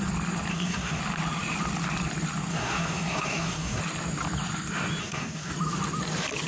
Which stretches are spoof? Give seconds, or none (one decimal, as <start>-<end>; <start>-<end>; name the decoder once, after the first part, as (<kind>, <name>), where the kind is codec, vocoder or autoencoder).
0.5-1.0 (codec, SNAC); 2.5-3.8; 5.0-5.5